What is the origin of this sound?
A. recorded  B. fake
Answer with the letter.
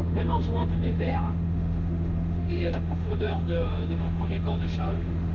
B